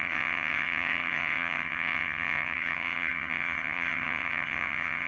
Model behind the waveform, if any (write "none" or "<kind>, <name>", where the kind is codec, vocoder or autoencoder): vocoder, HiFi-GAN